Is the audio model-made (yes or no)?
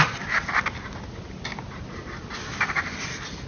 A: no